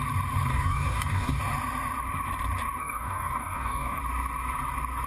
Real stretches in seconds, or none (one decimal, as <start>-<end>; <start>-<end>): 0.0-0.5; 1.4-2.8; 4.0-5.1